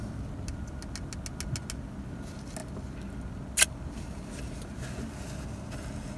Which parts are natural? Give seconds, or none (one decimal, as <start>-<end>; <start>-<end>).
0.0-6.2